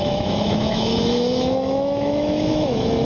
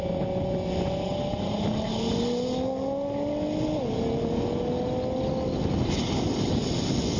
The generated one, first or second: first